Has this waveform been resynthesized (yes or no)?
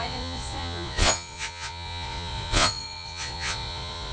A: yes